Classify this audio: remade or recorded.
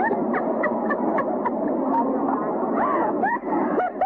recorded